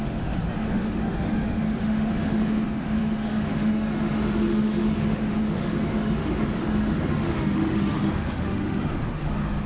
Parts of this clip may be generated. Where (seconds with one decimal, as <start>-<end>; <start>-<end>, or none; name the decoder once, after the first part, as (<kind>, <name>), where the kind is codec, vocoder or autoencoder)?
0.0-9.7 (autoencoder, DAC-VAE)